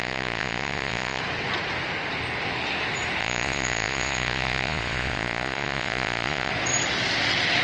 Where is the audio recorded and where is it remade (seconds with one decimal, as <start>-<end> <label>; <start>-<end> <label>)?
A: 0.0-1.2 remade; 1.2-3.2 recorded; 3.2-6.5 remade; 6.5-7.6 recorded